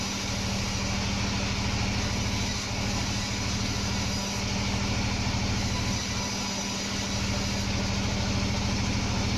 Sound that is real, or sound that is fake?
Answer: real